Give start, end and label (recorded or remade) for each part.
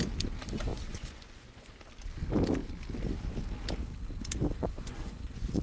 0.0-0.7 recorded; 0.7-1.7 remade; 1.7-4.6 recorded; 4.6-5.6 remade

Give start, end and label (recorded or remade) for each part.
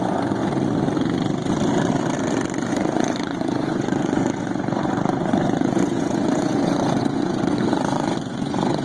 0.0-0.4 remade; 0.4-2.7 recorded; 2.7-8.8 remade